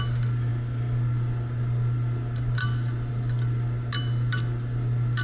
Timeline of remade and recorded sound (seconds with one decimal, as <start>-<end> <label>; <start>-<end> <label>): 0.0-5.2 recorded